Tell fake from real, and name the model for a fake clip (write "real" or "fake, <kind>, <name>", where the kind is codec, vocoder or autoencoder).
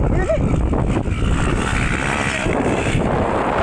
real